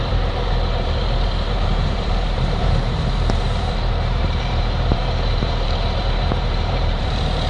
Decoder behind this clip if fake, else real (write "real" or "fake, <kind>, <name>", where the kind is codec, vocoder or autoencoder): fake, vocoder, BigVGAN v2